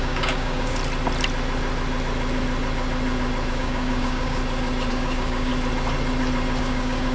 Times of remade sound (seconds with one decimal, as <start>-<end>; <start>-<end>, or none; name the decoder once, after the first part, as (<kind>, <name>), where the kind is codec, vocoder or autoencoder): 0.0-0.8 (codec, DAC); 3.5-4.4; 4.9-5.5; 6.6-7.1